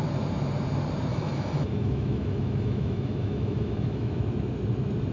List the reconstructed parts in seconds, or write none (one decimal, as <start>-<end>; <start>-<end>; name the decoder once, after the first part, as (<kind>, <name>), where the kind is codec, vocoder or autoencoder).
1.1-4.2 (autoencoder, DAC-VAE)